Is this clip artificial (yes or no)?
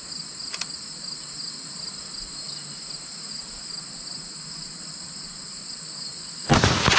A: no